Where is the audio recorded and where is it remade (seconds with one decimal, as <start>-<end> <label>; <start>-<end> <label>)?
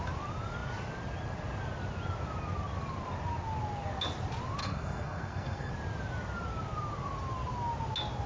0.0-4.6 recorded; 4.6-5.7 remade; 5.7-8.3 recorded